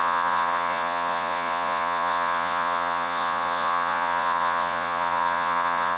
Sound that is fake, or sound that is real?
fake